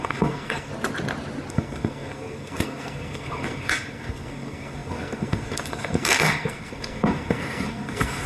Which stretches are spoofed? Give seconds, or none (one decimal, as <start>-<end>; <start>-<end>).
0.0-0.7; 1.5-8.3